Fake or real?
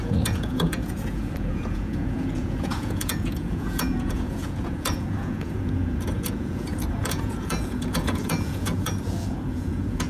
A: fake